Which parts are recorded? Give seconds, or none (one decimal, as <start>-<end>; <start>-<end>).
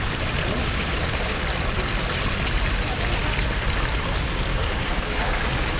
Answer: 0.0-0.6; 1.4-4.5